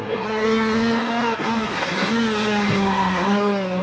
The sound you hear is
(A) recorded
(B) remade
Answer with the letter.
B